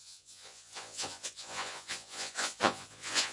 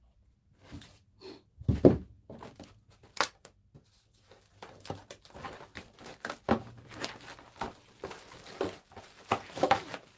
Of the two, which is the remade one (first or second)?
first